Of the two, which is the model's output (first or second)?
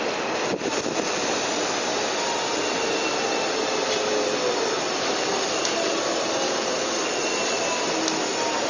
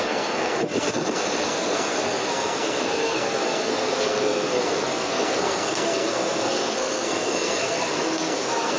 second